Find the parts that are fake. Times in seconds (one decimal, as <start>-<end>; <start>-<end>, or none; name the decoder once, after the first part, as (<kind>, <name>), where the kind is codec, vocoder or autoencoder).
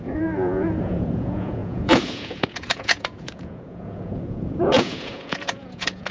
0.0-6.1 (vocoder, Vocos)